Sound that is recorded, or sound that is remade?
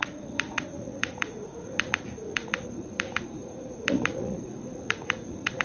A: remade